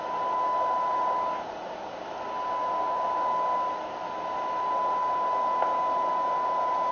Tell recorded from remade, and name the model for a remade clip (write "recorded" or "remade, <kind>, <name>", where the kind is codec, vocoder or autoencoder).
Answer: recorded